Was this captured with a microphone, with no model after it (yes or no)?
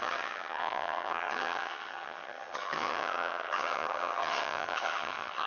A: no